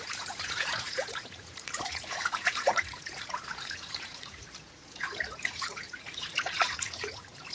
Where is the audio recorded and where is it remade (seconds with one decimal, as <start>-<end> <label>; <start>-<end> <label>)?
0.0-7.5 remade